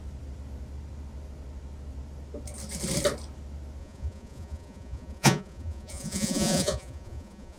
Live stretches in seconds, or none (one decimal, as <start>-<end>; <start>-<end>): 0.0-3.8